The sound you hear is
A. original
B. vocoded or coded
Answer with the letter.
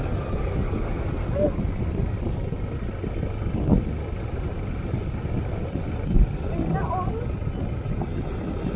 A